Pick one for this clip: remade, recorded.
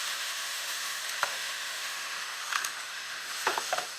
remade